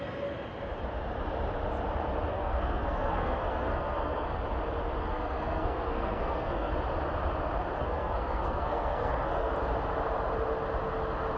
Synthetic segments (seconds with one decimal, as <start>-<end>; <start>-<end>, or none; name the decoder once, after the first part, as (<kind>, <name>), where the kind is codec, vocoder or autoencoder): 2.3-4.4 (codec, SNAC); 5.0-6.7; 7.8-9.5